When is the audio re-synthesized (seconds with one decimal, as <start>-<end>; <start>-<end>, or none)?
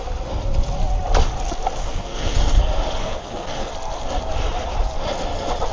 1.8-2.6; 3.0-3.7